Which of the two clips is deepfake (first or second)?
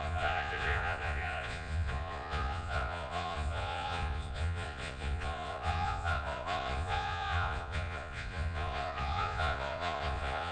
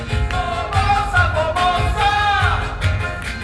first